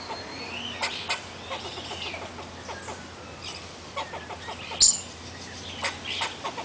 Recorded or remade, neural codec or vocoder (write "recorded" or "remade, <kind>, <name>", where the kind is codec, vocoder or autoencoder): recorded